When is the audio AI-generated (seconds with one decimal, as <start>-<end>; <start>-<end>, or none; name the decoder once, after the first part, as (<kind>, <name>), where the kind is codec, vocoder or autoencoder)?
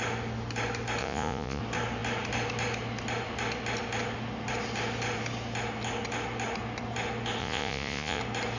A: 1.0-1.6 (vocoder, Vocos); 7.4-8.2